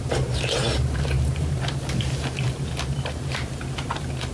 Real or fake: fake